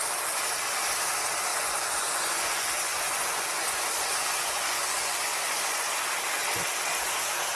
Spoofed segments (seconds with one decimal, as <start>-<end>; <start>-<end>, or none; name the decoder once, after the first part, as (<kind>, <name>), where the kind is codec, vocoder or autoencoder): 1.5-6.0 (vocoder, Vocos)